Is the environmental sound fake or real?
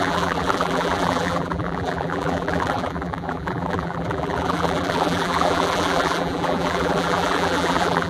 fake